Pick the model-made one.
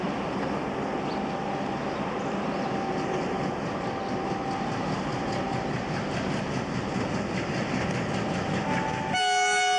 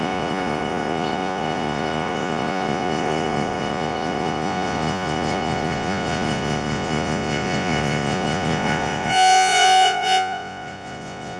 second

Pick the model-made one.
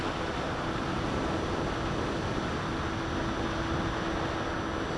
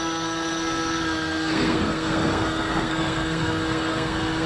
second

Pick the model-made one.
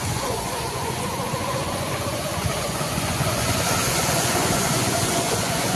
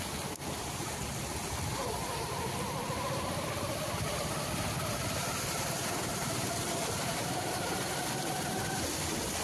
first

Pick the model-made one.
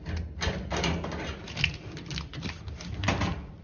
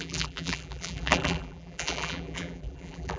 second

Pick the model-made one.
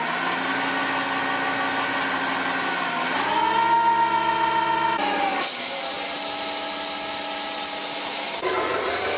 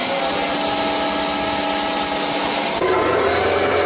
first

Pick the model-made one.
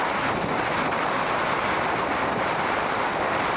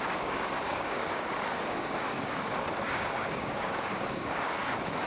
second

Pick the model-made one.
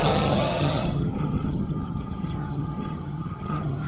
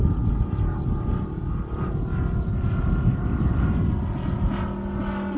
first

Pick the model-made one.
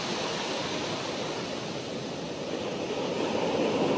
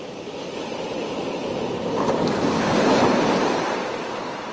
second